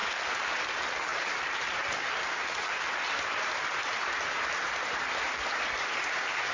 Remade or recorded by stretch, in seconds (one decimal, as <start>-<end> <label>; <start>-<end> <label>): 0.0-0.6 remade; 0.6-1.1 recorded; 1.1-4.8 remade; 4.8-6.5 recorded